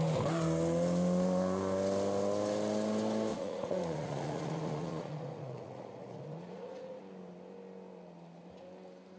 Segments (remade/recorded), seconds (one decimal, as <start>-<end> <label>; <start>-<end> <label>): 0.0-3.3 recorded; 3.3-7.0 remade; 7.0-9.2 recorded